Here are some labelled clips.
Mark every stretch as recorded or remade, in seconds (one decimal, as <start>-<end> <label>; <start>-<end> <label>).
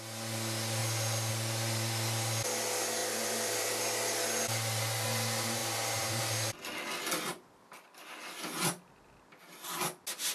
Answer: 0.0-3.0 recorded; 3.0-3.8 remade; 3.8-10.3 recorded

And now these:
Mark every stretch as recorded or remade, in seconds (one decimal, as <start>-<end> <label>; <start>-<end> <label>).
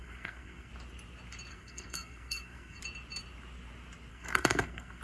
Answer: 0.0-0.7 remade; 0.7-1.5 recorded; 1.5-2.8 remade; 2.8-4.1 recorded; 4.1-5.0 remade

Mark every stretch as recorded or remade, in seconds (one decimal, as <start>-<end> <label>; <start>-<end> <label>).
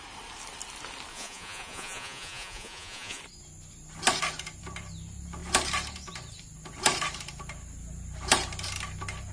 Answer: 0.0-1.1 recorded; 1.1-3.2 remade; 3.2-9.3 recorded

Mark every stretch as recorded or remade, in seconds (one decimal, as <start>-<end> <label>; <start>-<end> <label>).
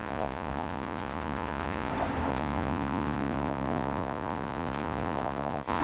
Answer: 0.0-1.9 remade; 1.9-2.3 recorded; 2.3-5.8 remade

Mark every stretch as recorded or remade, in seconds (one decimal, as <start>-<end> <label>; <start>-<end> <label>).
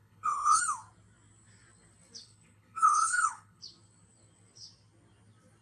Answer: 0.0-0.6 remade; 0.6-2.2 recorded; 2.2-3.6 remade; 3.6-5.6 recorded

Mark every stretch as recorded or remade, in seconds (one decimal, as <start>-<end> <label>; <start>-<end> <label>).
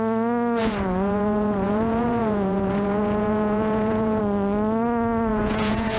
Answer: 0.0-0.6 recorded; 0.6-4.2 remade; 4.2-5.3 recorded; 5.3-6.0 remade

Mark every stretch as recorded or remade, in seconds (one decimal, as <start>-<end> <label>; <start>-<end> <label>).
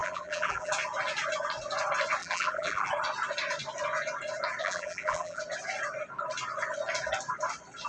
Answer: 0.0-0.7 remade; 0.7-2.2 recorded; 2.2-2.9 remade; 2.9-4.6 recorded; 4.6-5.4 remade; 5.4-7.9 recorded